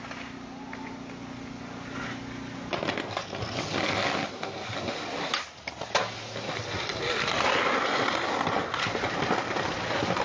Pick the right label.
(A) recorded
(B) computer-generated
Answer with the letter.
A